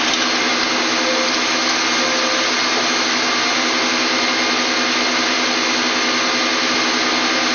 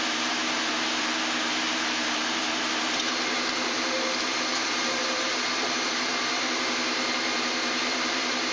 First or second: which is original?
first